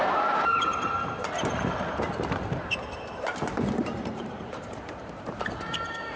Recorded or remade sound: remade